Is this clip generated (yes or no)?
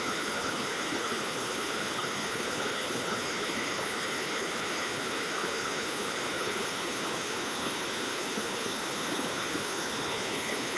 yes